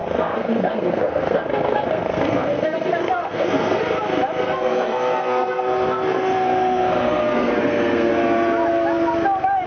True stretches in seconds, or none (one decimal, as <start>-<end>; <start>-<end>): 3.8-4.4; 8.1-9.7